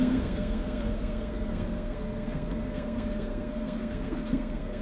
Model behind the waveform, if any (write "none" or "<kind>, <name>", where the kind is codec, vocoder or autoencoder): codec, SNAC